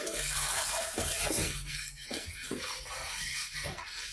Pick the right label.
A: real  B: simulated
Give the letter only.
B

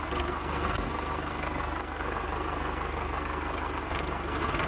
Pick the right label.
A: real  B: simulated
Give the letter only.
B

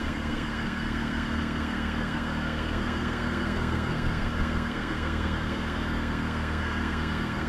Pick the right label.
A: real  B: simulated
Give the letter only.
B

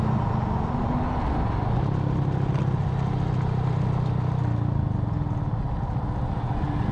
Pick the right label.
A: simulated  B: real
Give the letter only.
B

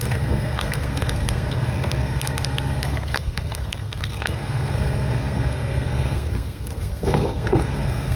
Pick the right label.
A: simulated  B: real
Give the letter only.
A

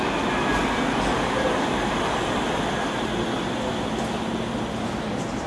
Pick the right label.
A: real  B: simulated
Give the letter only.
A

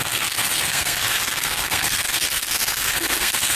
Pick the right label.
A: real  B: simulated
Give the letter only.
B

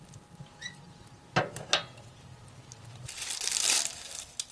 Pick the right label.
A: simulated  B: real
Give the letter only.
B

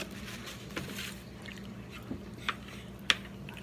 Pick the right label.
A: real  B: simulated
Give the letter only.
A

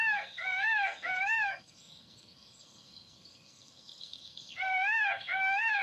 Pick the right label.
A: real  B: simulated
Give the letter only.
B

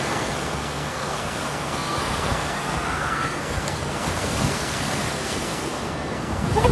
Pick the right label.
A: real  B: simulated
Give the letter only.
B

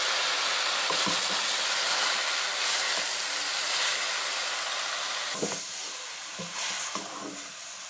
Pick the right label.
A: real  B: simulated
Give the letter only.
A